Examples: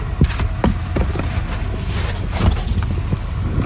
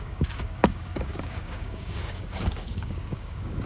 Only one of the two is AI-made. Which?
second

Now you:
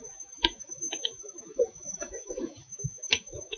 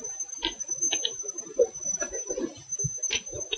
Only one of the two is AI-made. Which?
first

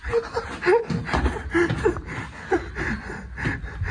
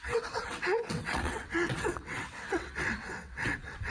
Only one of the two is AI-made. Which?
second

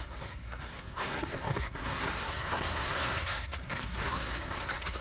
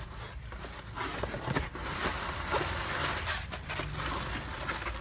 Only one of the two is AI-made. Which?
first